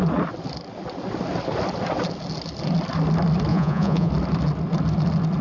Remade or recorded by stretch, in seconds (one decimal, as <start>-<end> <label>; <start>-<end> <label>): 0.0-3.5 recorded; 3.5-4.1 remade; 4.1-5.4 recorded